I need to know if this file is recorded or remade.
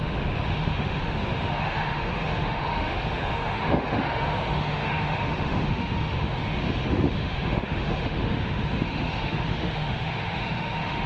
remade